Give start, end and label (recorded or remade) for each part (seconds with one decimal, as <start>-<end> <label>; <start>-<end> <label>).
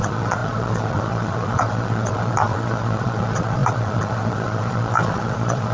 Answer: 0.0-5.7 remade